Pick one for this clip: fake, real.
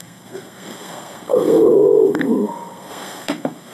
fake